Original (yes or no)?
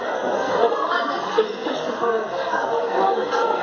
no